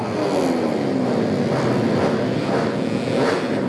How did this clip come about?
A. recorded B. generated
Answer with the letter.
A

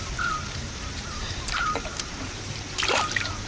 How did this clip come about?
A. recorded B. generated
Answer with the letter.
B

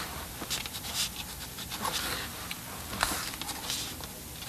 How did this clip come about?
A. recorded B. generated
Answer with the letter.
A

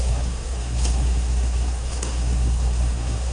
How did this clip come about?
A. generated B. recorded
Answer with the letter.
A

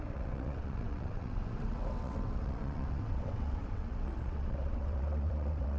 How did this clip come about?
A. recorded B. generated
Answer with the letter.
B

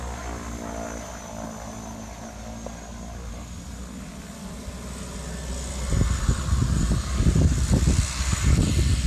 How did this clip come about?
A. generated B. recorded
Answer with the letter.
B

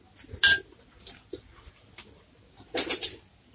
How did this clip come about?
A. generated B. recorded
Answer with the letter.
B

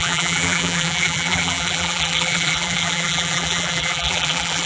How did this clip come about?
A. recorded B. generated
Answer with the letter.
B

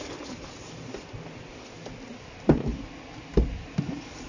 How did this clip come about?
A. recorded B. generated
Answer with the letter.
A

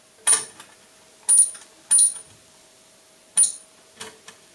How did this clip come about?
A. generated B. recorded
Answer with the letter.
B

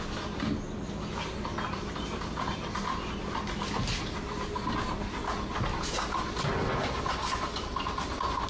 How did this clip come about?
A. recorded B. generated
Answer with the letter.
A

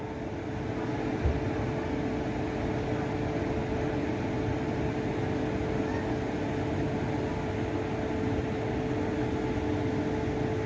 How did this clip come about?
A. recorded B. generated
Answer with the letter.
A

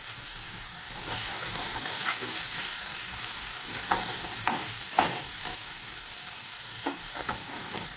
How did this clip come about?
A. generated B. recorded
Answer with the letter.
A